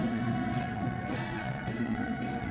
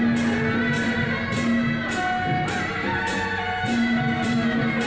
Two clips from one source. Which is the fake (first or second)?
first